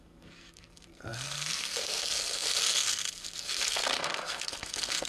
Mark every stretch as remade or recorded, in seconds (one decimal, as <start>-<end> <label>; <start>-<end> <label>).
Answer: 0.0-5.1 remade